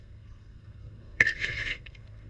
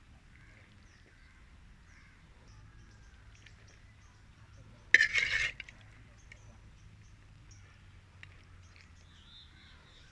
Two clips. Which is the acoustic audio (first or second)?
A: second